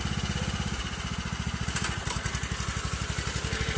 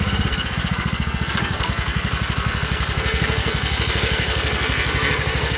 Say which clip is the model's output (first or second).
second